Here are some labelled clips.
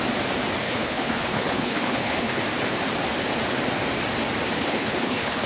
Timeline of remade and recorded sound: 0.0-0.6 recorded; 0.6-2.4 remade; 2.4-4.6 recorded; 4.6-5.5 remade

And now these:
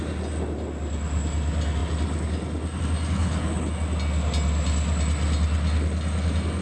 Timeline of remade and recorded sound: 0.0-3.2 recorded; 3.2-3.7 remade; 3.7-6.6 recorded

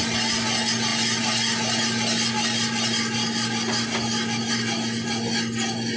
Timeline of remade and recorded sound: 0.0-6.0 recorded

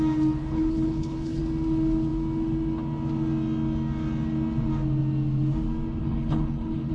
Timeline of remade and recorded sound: 0.0-0.4 recorded; 0.4-1.4 remade; 1.4-6.0 recorded; 6.0-6.9 remade